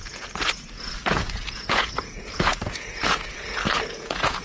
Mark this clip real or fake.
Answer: fake